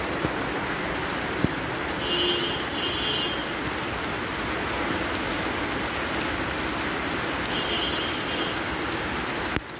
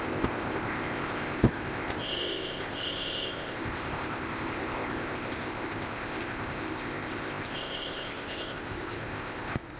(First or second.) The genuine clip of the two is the first